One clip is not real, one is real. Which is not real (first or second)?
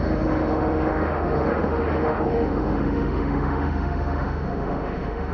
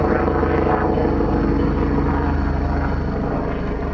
first